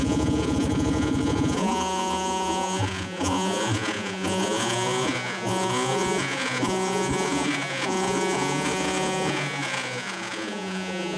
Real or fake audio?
fake